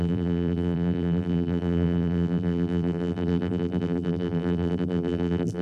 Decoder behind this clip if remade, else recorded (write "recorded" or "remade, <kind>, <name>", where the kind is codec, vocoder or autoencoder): remade, vocoder, BigVGAN v2